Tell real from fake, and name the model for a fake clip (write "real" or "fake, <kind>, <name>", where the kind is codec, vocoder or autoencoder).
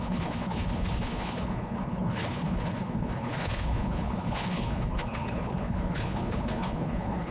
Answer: fake, codec, HILCodec